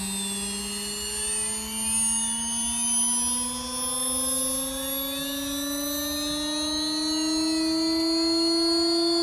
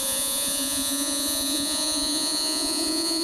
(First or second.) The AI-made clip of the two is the second